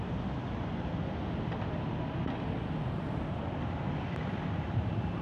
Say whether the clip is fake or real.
real